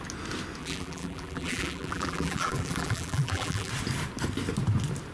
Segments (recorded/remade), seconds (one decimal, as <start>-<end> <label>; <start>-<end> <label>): 0.0-0.6 recorded; 0.6-3.7 remade; 3.7-5.1 recorded